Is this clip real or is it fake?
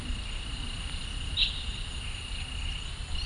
real